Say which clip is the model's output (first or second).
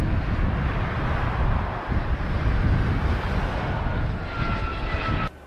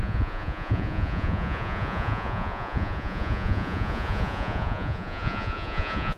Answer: second